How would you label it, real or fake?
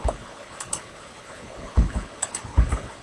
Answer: fake